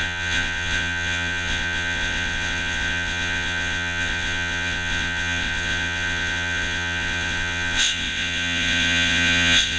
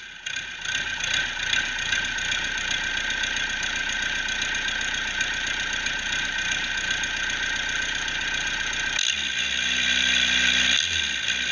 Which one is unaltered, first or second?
second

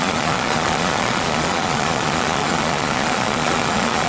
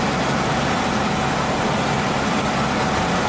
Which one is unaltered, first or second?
second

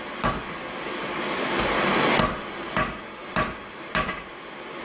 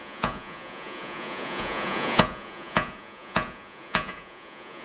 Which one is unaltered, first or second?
first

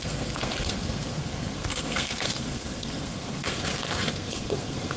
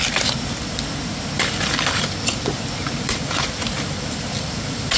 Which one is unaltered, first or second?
second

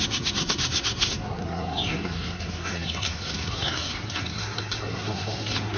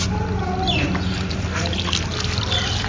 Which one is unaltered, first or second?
second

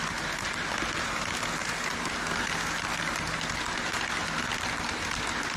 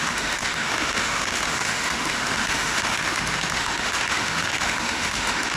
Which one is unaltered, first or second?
first